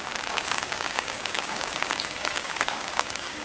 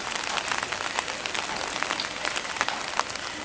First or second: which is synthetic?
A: first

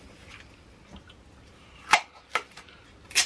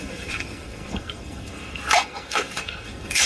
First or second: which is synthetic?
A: second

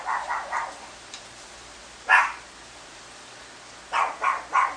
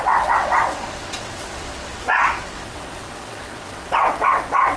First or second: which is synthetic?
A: second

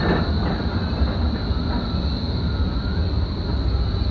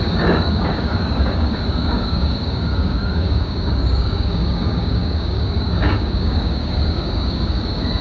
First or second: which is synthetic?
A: second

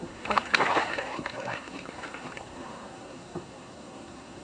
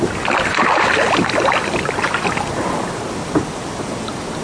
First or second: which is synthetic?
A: first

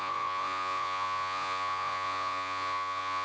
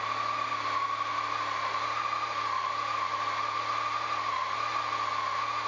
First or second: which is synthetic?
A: first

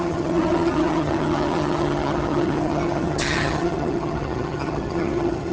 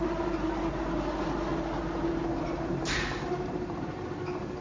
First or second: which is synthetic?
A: first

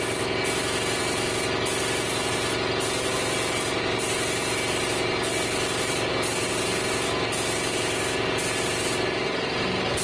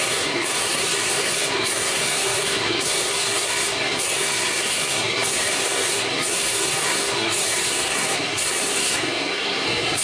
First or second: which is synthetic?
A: second